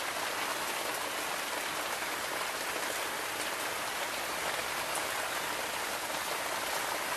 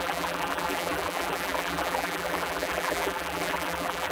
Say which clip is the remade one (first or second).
second